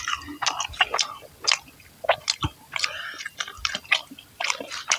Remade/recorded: recorded